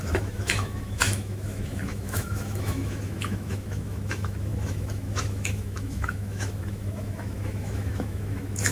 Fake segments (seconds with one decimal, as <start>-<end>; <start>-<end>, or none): 0.0-8.7